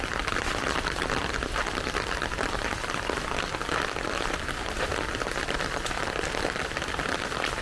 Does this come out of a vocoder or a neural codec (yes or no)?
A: yes